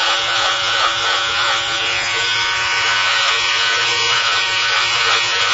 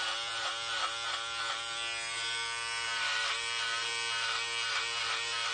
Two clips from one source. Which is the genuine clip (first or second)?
second